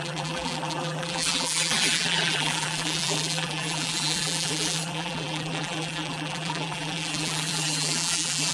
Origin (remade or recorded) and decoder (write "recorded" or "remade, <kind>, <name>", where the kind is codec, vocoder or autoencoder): remade, vocoder, BigVGAN v2